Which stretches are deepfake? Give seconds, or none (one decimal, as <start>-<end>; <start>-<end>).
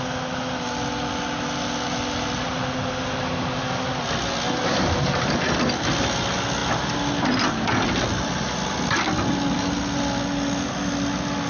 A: none